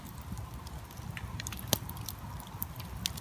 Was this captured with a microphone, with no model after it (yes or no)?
yes